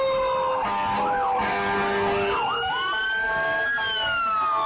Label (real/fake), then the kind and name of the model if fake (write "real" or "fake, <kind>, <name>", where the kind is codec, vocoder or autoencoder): real